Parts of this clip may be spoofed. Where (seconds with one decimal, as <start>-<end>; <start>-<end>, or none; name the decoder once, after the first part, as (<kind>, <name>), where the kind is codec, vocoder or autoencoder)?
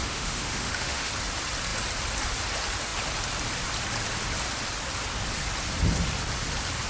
0.0-1.1 (autoencoder, DAC-VAE)